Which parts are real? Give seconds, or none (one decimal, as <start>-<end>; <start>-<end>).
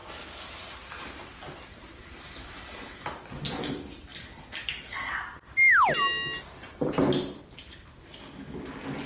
0.0-2.0; 3.1-9.1